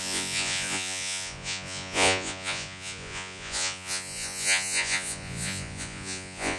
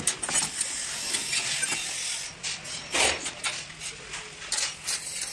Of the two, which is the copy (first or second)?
first